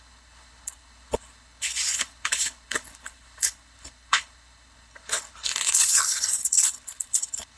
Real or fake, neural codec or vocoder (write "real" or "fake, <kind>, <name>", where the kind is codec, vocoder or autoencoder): fake, codec, HILCodec